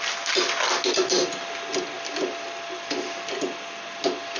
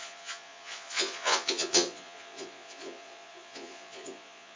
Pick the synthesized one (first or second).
second